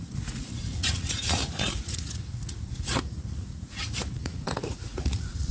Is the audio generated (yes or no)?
yes